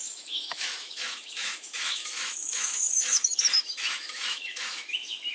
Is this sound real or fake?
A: fake